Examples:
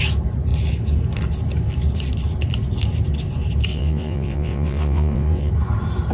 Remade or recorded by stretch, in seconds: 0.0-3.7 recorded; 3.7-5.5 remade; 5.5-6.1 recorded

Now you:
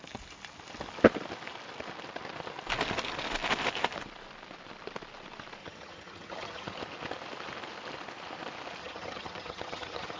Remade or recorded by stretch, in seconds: 0.0-5.6 recorded; 5.6-6.8 remade; 6.8-8.8 recorded; 8.8-10.2 remade

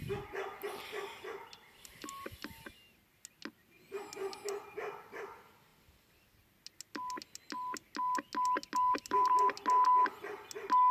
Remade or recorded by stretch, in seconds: 0.0-10.9 recorded

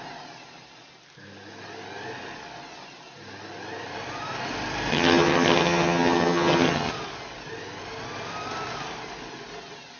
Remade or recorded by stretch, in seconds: 0.0-4.9 recorded; 4.9-6.9 remade; 6.9-10.0 recorded

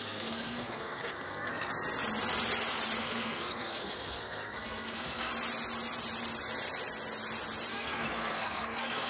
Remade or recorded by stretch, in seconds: 0.0-1.7 remade; 1.7-3.0 recorded; 3.0-5.3 remade; 5.3-7.7 recorded; 7.7-9.1 remade

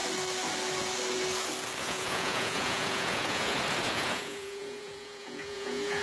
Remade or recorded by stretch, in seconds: 0.0-1.8 recorded; 1.8-6.0 remade

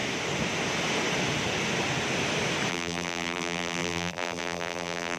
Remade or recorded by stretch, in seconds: 0.0-2.7 recorded; 2.7-5.2 remade